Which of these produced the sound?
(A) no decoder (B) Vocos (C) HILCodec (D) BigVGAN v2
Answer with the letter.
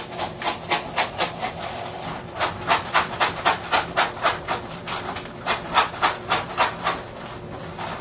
D